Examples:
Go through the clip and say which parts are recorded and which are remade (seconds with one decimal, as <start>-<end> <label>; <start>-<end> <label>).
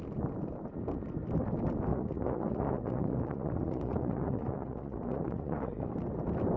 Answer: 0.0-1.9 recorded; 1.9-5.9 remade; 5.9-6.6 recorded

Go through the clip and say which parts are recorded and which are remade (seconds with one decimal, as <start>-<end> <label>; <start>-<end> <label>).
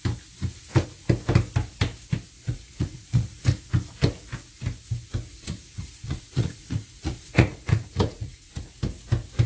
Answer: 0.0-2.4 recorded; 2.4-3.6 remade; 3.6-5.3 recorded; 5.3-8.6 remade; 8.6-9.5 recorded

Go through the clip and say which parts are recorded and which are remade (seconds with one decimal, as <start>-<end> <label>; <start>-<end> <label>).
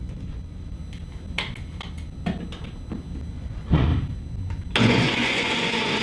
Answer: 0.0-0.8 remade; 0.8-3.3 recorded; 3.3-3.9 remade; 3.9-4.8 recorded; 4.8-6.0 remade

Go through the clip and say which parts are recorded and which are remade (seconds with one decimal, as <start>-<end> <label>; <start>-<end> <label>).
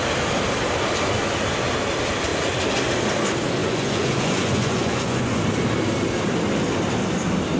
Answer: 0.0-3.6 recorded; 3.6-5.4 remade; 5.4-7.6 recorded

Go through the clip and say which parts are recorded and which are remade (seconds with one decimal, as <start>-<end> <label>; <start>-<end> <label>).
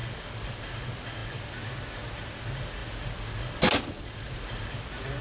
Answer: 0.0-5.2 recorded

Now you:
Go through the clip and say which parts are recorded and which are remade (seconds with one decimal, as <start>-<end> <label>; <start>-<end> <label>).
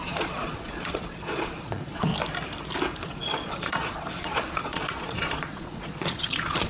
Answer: 0.0-2.1 remade; 2.1-3.0 recorded; 3.0-6.7 remade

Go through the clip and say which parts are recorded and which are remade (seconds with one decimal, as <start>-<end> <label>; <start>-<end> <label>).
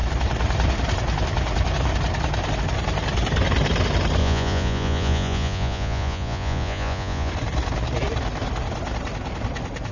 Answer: 0.0-4.2 recorded; 4.2-7.3 remade; 7.3-9.9 recorded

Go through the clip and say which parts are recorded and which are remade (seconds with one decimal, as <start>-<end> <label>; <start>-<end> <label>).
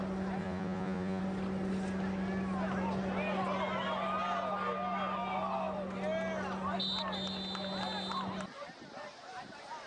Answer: 0.0-0.4 recorded; 0.4-1.2 remade; 1.2-9.9 recorded